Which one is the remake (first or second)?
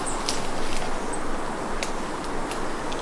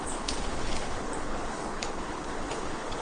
second